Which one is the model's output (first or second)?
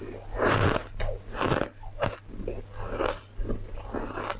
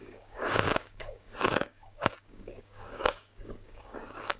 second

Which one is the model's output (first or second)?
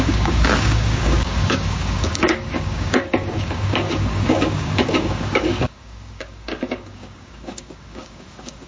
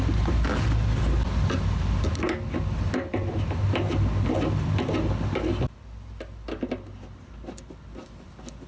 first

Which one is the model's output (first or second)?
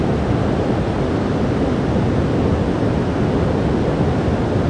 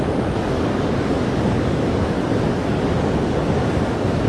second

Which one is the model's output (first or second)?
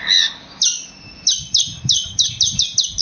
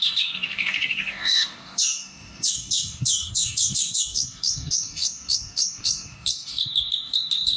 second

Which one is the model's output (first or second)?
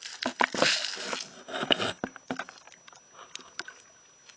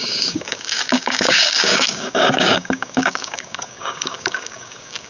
second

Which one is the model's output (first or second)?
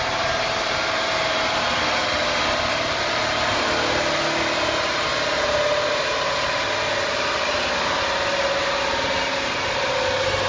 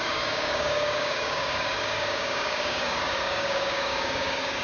second